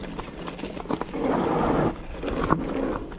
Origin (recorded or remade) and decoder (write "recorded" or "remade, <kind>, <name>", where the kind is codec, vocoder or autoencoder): recorded